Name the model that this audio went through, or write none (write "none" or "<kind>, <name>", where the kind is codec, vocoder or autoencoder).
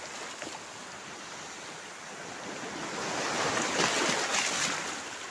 none